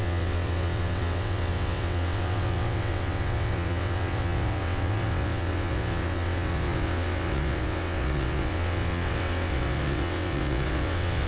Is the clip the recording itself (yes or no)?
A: no